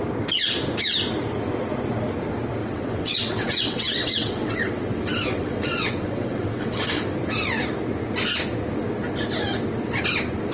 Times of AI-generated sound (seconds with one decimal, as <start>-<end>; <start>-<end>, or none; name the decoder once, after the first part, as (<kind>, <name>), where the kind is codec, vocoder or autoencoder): 2.6-6.8 (vocoder, WaveNeXt)